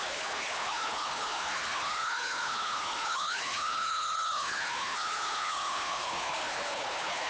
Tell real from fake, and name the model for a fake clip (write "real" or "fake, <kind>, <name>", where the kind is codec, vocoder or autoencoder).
fake, codec, HILCodec